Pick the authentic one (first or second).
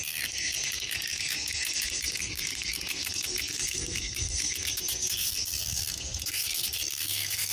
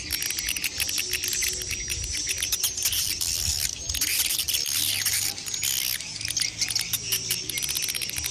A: second